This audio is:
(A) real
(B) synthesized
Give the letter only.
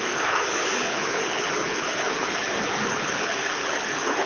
B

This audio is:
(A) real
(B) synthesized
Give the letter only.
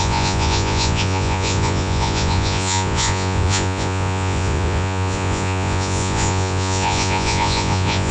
B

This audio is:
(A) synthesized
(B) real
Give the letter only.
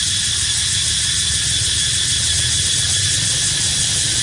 B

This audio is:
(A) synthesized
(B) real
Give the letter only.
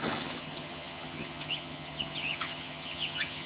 A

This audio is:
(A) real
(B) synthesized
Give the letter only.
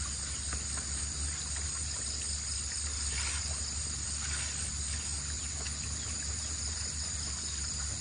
A